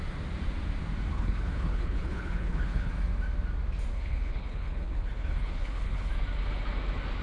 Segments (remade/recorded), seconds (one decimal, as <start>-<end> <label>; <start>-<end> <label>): 0.0-1.1 recorded; 1.1-2.9 remade; 2.9-3.9 recorded; 3.9-6.1 remade; 6.1-7.2 recorded